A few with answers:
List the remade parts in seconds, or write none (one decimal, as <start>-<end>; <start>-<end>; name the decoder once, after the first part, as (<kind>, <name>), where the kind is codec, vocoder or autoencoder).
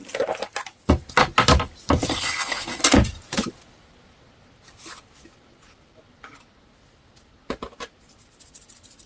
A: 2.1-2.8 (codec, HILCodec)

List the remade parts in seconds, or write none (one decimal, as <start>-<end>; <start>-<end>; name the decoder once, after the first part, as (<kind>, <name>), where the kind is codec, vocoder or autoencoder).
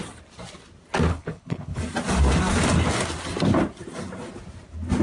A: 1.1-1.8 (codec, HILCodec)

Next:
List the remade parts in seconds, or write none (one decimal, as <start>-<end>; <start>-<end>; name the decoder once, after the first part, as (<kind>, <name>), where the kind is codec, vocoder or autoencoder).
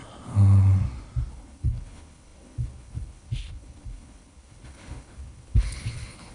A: 1.3-6.3 (codec, HILCodec)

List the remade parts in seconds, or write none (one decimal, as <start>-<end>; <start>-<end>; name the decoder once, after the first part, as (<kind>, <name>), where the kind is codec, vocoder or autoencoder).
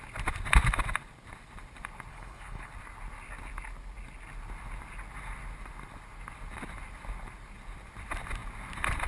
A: 2.1-2.7 (codec, HILCodec)